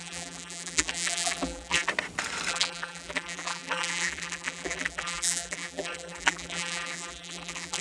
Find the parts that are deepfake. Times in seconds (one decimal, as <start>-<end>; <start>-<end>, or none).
0.0-1.9; 2.5-7.8